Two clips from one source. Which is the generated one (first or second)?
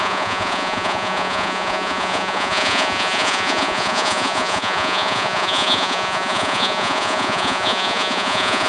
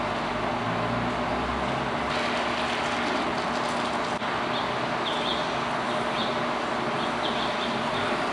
first